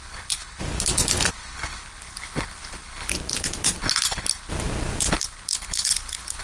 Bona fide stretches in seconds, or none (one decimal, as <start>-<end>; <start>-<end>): 0.6-1.3; 3.1-3.8; 4.5-5.1